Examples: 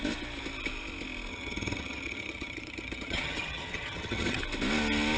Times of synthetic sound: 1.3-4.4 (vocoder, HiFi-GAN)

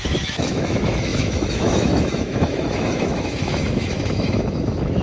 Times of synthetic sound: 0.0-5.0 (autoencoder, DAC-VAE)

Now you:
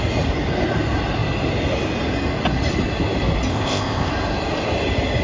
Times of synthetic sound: 3.5-4.1 (codec, ZipCodec)

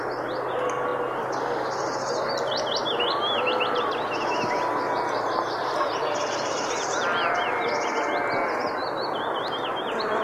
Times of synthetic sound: none